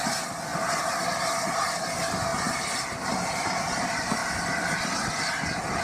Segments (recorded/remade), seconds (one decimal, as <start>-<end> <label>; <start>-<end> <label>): 0.0-0.5 remade; 0.5-1.2 recorded; 1.2-4.2 remade; 4.2-5.8 recorded